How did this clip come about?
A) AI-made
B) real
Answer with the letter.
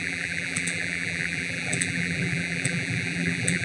A